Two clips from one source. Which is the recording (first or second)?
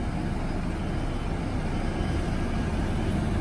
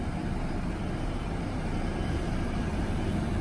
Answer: first